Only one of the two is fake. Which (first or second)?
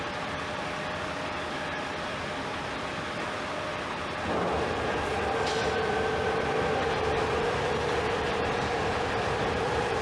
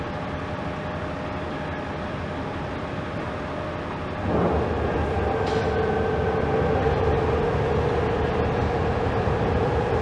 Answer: first